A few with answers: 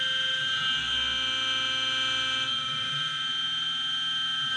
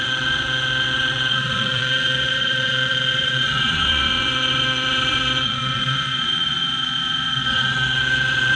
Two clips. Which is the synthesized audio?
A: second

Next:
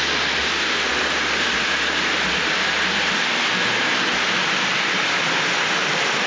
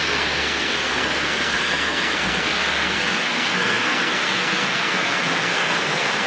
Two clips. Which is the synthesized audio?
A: second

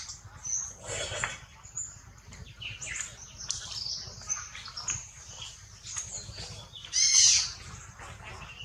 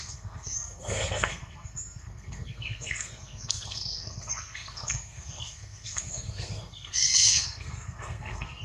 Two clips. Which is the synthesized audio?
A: second